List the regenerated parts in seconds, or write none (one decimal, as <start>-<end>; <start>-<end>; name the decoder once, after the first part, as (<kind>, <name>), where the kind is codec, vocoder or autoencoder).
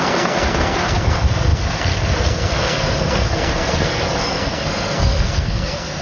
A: 0.0-6.0 (codec, SNAC)